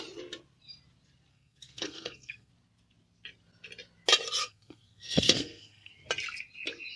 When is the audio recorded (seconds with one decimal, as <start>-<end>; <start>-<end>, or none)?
0.0-1.3; 2.5-4.4; 5.9-7.0